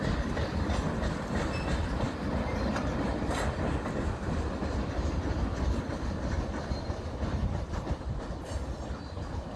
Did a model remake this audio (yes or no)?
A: no